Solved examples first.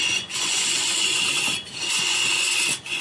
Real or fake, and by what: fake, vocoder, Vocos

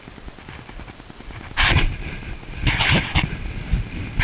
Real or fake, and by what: real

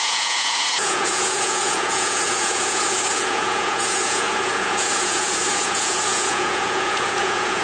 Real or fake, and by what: fake, vocoder, Vocos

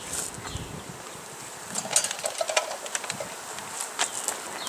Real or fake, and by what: real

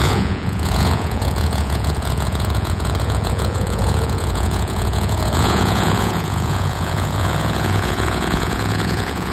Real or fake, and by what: fake, vocoder, Vocos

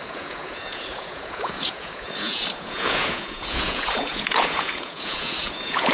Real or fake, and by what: fake, vocoder, Vocos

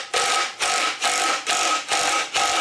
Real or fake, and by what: real